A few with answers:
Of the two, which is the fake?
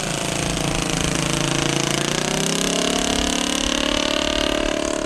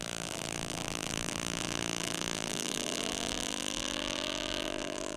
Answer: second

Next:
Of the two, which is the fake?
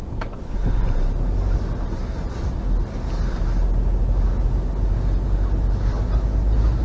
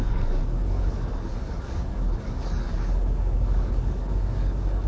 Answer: second